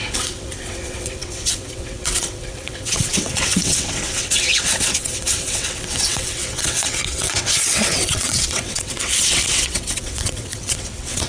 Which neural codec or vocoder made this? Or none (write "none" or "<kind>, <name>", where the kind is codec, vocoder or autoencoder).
vocoder, WaveNeXt